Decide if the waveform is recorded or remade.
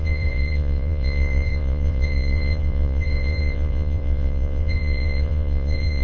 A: remade